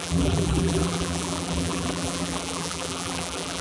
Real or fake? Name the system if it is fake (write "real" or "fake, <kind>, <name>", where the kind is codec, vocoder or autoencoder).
fake, vocoder, BigVGAN v2